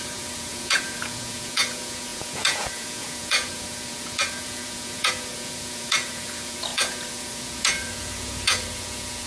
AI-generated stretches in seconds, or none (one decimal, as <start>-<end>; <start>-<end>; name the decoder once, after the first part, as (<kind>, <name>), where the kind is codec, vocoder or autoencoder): 0.0-9.3 (vocoder, Vocos)